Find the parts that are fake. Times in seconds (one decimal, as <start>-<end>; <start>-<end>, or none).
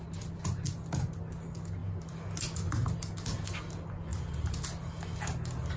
none